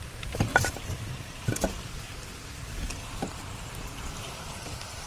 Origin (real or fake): fake